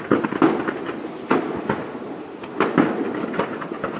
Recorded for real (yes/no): yes